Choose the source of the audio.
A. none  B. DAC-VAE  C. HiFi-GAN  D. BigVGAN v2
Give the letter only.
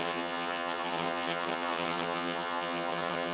C